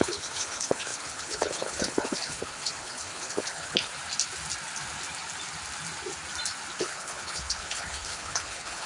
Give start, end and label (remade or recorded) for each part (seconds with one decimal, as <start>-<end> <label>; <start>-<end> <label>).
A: 0.0-3.9 remade; 3.9-6.8 recorded; 6.8-8.9 remade

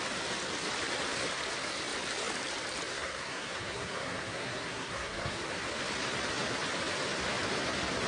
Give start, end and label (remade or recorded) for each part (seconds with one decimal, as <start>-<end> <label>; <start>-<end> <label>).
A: 0.0-2.9 recorded; 2.9-5.4 remade; 5.4-8.1 recorded